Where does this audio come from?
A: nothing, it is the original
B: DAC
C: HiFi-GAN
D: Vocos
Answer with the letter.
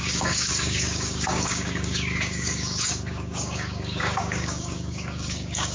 B